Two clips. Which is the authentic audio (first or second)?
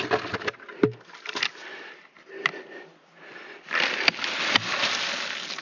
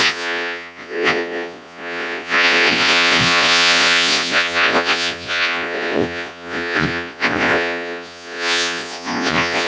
first